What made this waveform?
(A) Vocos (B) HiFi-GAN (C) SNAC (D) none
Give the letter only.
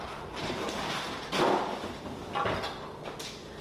D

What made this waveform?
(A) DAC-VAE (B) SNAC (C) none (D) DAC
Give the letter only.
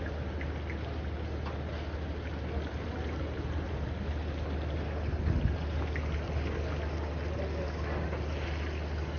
C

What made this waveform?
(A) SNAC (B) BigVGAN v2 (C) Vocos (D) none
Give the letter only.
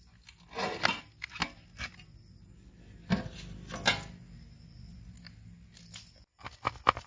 D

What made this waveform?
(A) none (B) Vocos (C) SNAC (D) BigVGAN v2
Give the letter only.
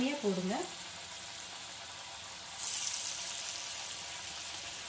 A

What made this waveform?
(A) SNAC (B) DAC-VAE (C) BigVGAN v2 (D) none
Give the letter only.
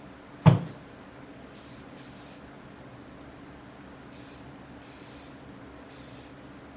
D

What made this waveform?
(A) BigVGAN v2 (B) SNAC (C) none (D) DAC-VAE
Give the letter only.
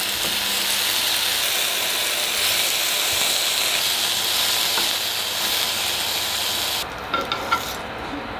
C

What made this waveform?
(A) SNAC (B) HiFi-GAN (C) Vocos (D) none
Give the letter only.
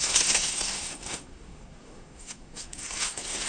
A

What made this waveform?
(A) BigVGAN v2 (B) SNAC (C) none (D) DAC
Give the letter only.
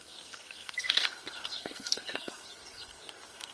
B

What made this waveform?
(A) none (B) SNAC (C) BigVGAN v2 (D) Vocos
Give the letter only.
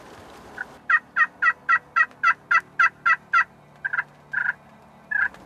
A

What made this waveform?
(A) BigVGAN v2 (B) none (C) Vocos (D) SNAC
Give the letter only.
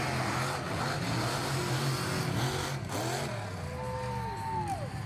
B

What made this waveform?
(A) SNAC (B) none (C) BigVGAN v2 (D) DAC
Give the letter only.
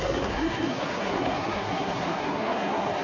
A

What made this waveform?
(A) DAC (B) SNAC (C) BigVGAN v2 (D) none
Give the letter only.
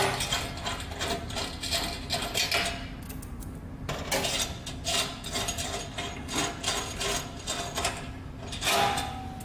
D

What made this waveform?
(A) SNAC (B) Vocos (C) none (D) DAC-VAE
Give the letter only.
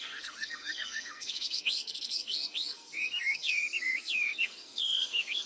A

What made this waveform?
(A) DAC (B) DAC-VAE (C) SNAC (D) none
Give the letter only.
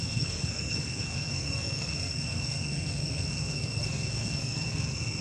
C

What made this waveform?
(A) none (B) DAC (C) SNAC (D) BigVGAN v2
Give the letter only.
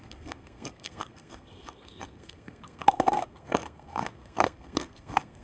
C